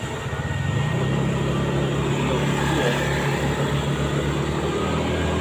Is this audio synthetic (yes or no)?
no